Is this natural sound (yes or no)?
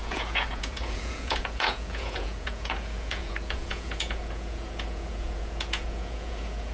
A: no